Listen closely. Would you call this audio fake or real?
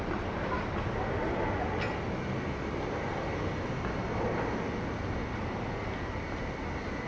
real